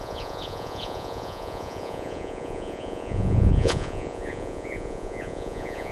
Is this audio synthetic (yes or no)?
yes